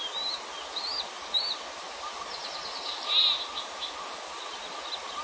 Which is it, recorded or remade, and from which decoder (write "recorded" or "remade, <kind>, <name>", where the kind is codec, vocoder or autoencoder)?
recorded